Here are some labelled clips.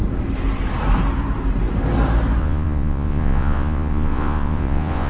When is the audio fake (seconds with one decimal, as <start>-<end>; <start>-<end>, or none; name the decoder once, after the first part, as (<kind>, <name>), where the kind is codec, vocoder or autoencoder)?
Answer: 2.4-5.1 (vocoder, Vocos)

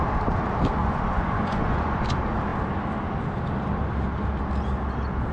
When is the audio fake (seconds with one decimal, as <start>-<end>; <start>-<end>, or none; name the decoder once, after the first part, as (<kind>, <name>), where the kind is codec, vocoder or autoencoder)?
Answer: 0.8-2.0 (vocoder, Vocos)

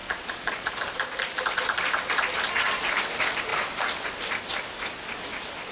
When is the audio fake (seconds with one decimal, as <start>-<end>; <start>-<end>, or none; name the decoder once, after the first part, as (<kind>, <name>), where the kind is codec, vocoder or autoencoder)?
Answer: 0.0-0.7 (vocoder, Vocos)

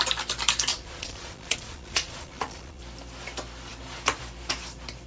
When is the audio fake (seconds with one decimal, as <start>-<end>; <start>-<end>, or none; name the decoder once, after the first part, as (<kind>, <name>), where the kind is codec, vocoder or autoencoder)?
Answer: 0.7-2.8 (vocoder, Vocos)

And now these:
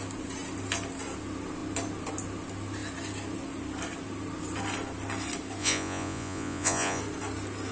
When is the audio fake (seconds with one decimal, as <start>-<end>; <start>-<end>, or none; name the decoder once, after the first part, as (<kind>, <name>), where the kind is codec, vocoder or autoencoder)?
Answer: 5.6-7.0 (vocoder, Vocos)

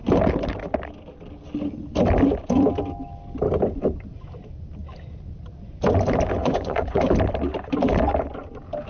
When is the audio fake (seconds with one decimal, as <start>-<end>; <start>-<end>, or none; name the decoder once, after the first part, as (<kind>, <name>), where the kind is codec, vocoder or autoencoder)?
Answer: 6.4-7.0 (vocoder, Vocos)